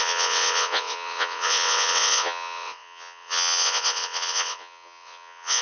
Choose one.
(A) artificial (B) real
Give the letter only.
A